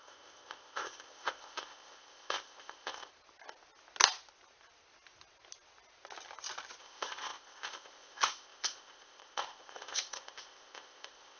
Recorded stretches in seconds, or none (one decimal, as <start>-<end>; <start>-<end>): 3.1-6.8